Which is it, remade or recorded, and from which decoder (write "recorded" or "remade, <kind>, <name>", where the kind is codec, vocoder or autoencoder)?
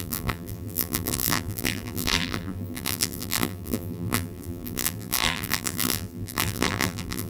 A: remade, vocoder, BigVGAN v2